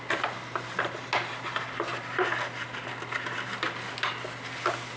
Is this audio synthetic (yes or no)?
no